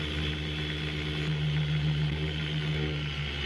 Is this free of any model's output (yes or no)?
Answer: yes